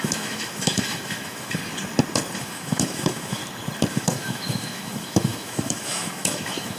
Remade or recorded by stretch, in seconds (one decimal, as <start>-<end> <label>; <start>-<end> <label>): 0.0-1.6 remade; 1.6-2.4 recorded; 2.4-3.4 remade; 3.4-3.9 recorded; 3.9-6.8 remade